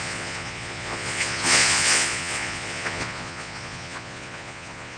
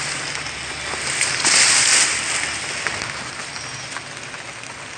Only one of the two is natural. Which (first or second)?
second